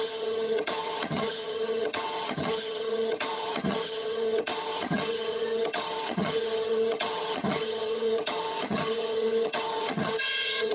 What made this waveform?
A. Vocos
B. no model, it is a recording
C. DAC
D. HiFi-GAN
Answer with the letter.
D